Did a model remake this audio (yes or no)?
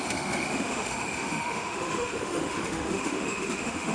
yes